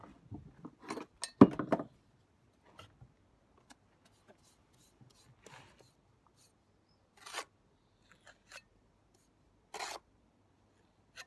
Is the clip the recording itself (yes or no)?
yes